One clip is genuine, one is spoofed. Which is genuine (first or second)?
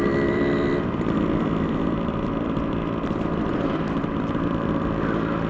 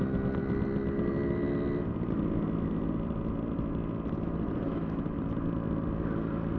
second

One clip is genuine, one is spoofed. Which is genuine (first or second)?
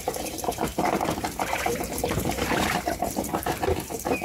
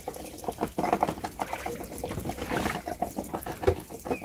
second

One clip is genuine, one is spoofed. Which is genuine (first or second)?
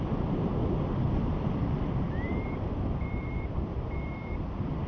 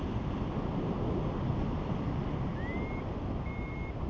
second